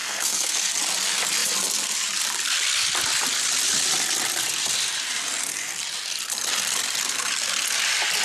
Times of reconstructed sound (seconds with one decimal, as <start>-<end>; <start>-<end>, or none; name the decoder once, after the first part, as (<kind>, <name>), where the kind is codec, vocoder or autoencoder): 0.0-0.7 (codec, SNAC)